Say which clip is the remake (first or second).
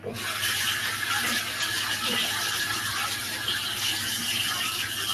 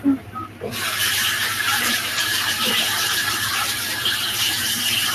second